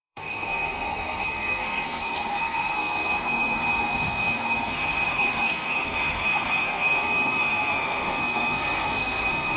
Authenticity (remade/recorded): remade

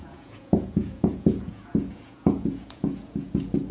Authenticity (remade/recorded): remade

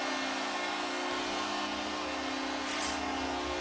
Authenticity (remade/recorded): recorded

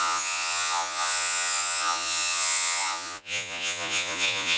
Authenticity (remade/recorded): remade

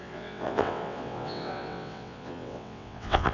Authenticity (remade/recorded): remade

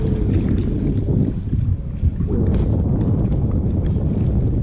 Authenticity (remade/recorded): recorded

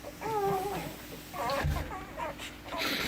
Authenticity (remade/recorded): recorded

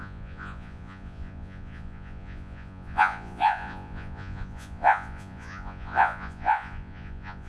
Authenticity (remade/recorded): remade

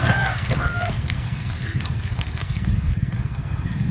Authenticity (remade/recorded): remade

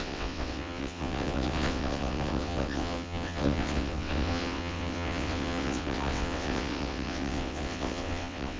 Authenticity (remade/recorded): remade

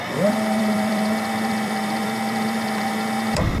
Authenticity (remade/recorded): remade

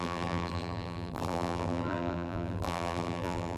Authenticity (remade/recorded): remade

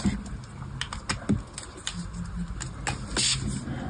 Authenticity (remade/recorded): recorded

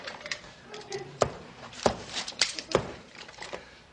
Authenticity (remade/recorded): remade